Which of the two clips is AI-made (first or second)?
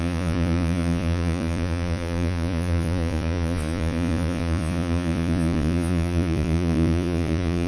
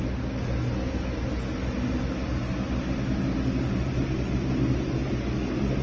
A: first